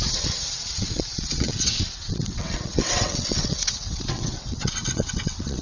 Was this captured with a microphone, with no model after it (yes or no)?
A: no